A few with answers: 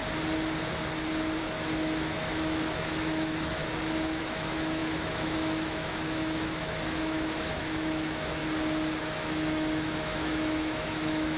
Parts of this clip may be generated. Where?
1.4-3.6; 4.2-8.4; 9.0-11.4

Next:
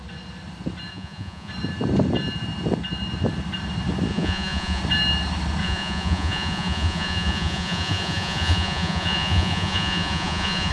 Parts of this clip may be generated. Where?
0.9-1.5; 4.1-4.8; 5.6-10.7

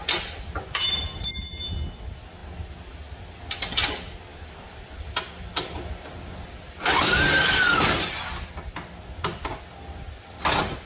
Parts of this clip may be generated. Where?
4.3-5.2

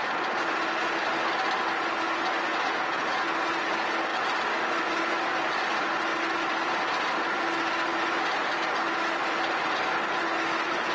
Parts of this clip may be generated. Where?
2.5-3.2

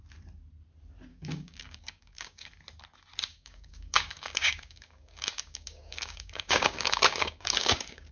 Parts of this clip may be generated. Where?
1.1-2.5; 3.3-8.1

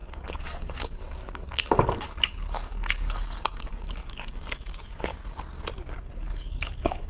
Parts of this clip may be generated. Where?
0.0-5.1; 6.2-7.1